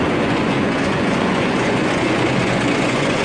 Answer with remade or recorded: remade